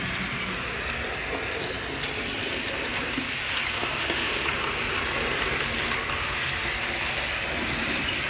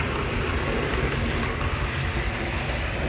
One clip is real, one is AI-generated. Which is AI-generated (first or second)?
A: second